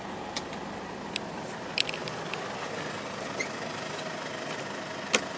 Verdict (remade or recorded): recorded